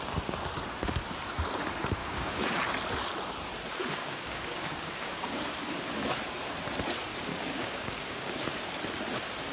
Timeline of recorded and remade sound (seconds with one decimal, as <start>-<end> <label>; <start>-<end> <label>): 0.0-2.0 recorded; 2.0-2.6 remade; 2.6-4.0 recorded; 4.0-5.4 remade; 5.4-7.3 recorded; 7.3-8.4 remade; 8.4-9.5 recorded